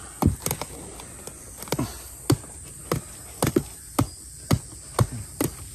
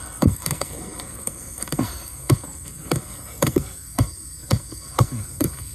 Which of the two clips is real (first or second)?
first